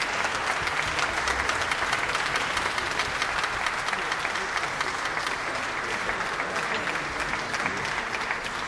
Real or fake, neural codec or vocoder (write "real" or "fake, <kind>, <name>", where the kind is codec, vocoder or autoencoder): real